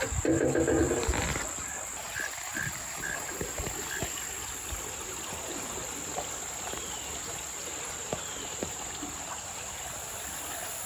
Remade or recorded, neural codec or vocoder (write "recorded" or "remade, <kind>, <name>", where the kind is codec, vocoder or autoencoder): recorded